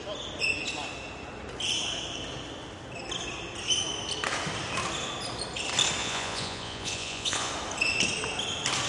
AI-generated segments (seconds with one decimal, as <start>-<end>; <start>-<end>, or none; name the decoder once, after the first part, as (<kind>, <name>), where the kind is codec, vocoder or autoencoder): 6.0-7.5 (vocoder, Vocos)